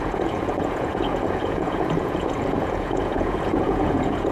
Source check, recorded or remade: remade